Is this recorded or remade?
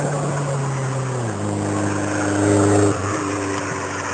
recorded